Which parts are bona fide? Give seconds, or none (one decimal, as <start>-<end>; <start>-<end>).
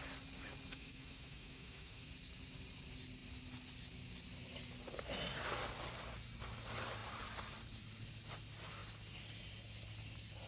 0.0-0.7; 2.1-10.5